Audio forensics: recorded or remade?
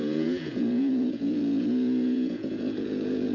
remade